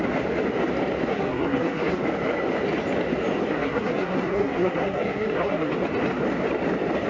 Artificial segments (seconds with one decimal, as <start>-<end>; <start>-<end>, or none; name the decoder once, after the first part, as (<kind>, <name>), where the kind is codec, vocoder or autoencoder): 1.1-2.0 (codec, SNAC); 3.4-5.7